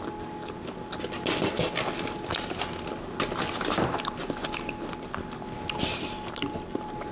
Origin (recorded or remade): recorded